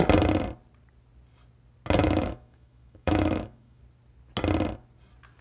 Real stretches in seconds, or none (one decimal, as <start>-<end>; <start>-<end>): 0.0-2.0; 3.8-5.4